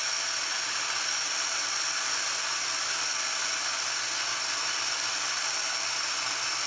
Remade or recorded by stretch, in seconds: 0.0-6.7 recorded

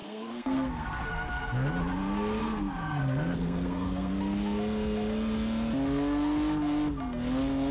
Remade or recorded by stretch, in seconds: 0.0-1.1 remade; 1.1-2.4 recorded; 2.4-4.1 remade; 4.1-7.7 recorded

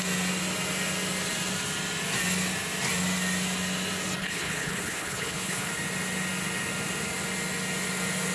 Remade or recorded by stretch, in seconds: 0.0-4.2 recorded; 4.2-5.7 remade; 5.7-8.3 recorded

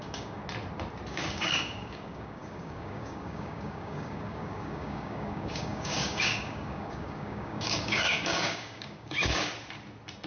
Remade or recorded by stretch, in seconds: 0.0-0.4 remade; 0.4-1.1 recorded; 1.1-9.5 remade; 9.5-10.3 recorded